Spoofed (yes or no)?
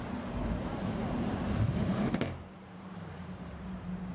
yes